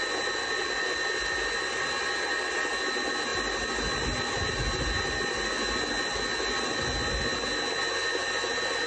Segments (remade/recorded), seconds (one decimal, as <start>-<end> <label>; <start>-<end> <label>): 0.0-8.9 recorded